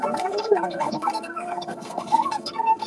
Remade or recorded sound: remade